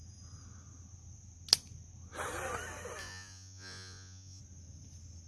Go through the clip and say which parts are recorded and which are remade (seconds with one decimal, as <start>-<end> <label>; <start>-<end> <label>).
0.0-3.0 recorded; 3.0-4.4 remade; 4.4-5.3 recorded